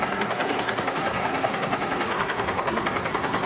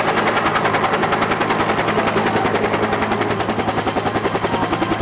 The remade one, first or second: first